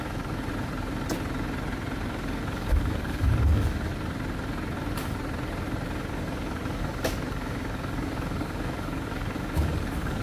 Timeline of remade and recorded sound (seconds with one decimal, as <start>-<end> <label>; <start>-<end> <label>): 0.0-0.5 remade; 0.5-2.1 recorded; 2.1-3.9 remade; 3.9-6.1 recorded; 6.1-10.2 remade